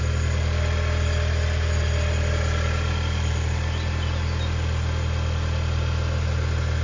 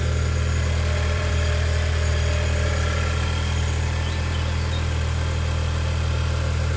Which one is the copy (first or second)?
second